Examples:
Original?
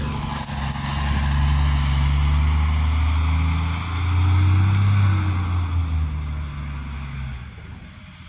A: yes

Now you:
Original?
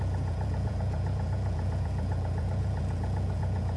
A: no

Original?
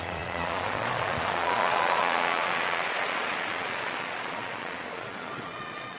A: no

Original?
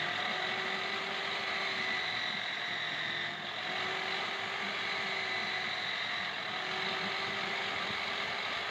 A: yes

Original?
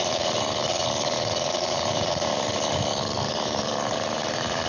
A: no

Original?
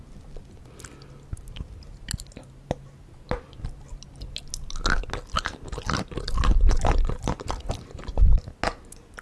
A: yes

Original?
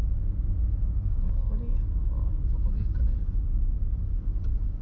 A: yes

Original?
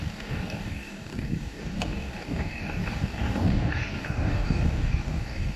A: no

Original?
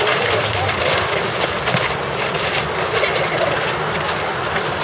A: no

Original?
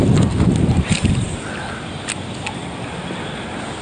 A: yes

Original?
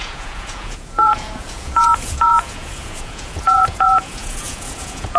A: no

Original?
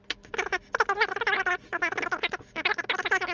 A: yes